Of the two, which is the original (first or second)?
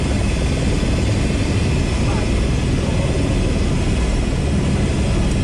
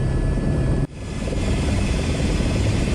first